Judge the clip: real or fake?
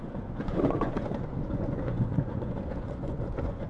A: fake